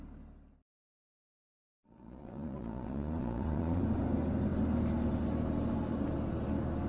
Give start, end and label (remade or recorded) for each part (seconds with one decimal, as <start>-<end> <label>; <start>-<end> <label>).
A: 0.0-1.3 recorded; 1.3-3.8 remade; 3.8-6.9 recorded